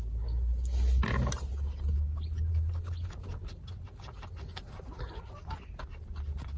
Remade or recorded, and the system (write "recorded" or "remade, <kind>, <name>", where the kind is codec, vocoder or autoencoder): recorded